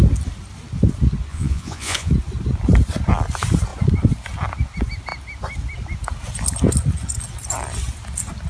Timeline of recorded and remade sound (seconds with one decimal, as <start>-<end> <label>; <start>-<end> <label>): 0.0-1.3 recorded; 1.3-2.1 remade; 2.1-8.5 recorded